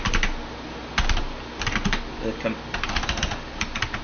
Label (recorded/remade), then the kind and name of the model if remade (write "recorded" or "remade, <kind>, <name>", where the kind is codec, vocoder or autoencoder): recorded